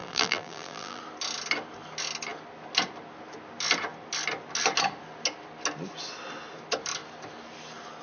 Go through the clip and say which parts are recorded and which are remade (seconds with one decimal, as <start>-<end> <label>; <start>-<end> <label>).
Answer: 0.0-1.0 remade; 1.0-8.0 recorded